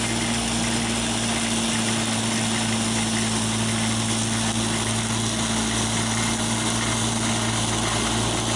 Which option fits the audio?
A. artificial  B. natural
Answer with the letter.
B